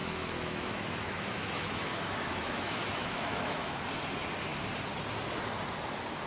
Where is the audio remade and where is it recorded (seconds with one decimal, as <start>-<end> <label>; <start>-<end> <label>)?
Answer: 0.0-3.8 remade; 3.8-6.3 recorded